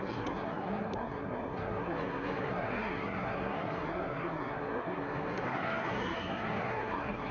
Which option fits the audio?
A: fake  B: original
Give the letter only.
A